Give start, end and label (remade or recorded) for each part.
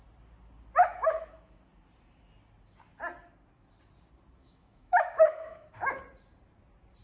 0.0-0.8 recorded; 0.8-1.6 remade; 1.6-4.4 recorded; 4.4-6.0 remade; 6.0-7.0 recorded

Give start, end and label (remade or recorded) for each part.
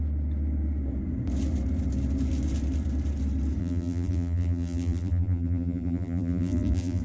0.0-3.6 recorded; 3.6-7.0 remade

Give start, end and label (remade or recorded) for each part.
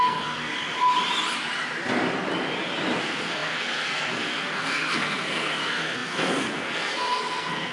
0.0-0.5 remade; 0.5-3.0 recorded; 3.0-7.7 remade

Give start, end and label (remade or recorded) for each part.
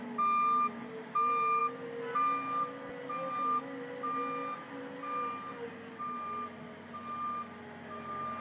0.0-8.4 recorded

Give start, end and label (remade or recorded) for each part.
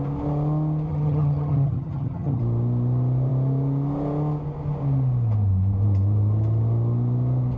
0.0-0.9 recorded; 0.9-2.4 remade; 2.4-7.6 recorded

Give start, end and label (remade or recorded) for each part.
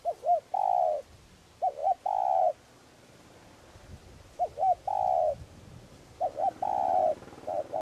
0.0-7.8 recorded